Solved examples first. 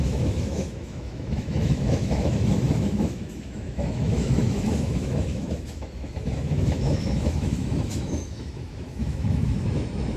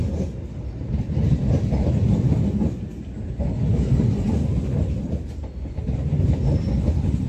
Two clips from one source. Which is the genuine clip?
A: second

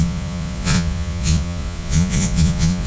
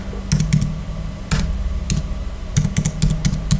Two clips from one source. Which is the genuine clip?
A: second